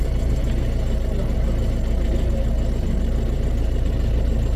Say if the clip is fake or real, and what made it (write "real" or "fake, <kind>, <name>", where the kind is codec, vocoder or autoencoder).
real